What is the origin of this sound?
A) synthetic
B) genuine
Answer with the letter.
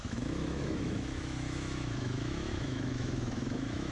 A